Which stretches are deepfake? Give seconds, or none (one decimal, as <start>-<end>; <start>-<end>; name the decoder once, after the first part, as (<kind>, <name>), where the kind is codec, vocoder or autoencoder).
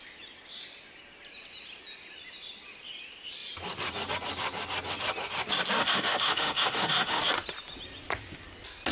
5.8-7.2 (autoencoder, DAC-VAE)